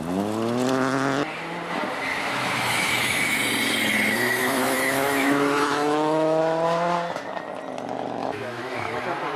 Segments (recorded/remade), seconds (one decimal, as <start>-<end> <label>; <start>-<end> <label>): 0.0-2.1 recorded; 2.1-3.4 remade; 3.4-4.4 recorded; 4.4-6.4 remade; 6.4-8.2 recorded; 8.2-9.0 remade; 9.0-9.4 recorded